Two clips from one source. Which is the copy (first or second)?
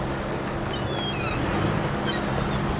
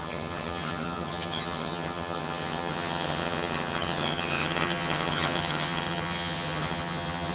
second